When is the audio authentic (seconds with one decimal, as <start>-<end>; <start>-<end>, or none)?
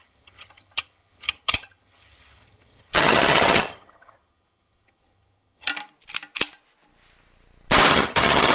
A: 5.7-7.9